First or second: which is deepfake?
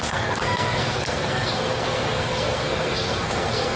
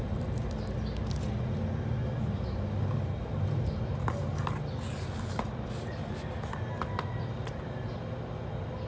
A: first